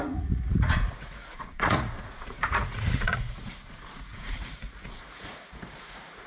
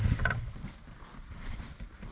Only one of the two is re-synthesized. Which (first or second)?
first